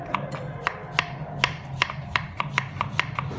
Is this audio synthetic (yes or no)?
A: no